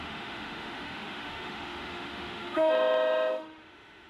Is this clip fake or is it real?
fake